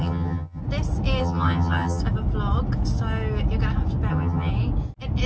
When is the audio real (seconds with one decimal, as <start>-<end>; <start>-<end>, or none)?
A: 0.6-1.2; 2.0-4.1; 4.5-5.3